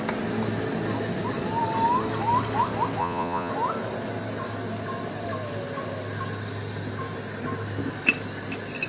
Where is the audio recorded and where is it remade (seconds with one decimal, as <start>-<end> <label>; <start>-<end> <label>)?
0.0-3.0 recorded; 3.0-3.5 remade; 3.5-8.9 recorded